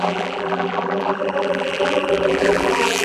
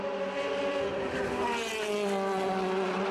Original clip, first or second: second